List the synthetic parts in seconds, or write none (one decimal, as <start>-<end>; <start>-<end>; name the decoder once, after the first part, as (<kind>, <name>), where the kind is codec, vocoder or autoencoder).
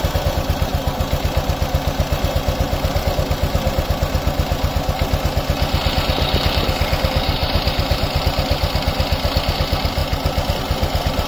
7.4-8.2 (vocoder, BigVGAN v2)